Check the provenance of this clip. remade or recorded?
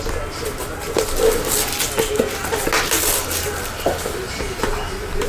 recorded